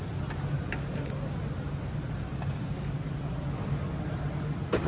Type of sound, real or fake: real